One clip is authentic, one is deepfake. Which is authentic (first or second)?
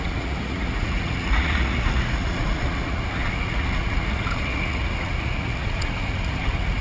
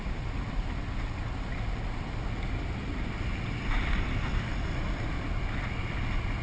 second